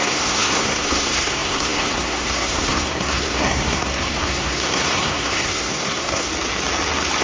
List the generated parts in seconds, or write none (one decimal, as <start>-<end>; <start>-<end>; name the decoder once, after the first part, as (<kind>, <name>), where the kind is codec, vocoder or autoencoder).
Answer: 0.0-6.3 (codec, SNAC)